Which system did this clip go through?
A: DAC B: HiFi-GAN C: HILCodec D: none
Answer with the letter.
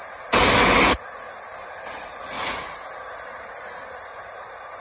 D